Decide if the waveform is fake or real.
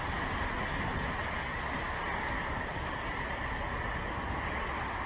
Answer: real